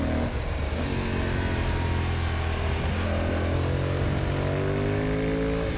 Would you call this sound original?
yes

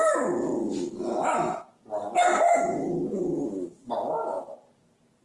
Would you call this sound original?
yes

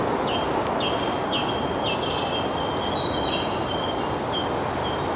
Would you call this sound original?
yes